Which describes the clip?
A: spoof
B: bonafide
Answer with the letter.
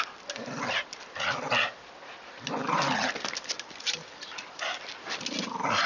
B